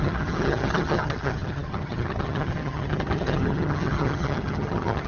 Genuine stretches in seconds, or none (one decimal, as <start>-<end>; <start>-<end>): none